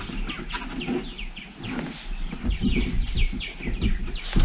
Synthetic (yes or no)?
no